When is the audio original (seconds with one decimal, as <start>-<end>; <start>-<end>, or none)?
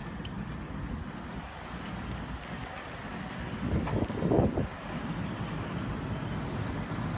0.0-4.7; 5.9-7.2